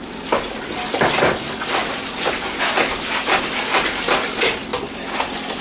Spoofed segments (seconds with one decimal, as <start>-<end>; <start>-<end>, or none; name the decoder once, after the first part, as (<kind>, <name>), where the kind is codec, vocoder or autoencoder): 4.7-5.6 (vocoder, BigVGAN v2)